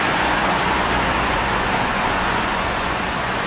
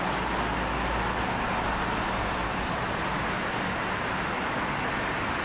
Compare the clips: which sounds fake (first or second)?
first